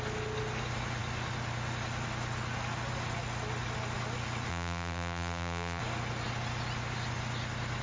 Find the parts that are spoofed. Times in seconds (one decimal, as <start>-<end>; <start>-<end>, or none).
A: 4.5-5.8